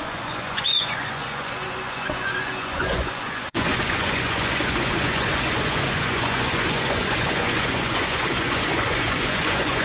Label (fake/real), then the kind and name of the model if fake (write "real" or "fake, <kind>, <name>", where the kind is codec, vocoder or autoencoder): fake, vocoder, Vocos